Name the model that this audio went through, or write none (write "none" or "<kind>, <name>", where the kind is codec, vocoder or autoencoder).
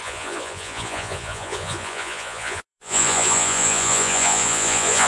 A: vocoder, Vocos